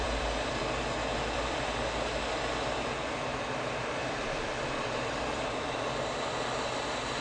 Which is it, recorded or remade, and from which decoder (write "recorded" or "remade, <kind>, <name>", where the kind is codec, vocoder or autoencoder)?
remade, vocoder, BigVGAN v2